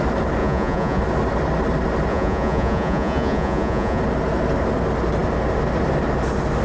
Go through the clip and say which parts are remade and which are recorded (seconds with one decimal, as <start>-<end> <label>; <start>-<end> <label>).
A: 0.0-0.4 recorded; 0.4-1.0 remade; 1.0-2.1 recorded; 2.1-4.0 remade; 4.0-6.6 recorded